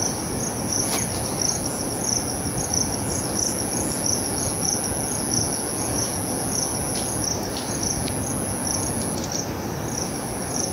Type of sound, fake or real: real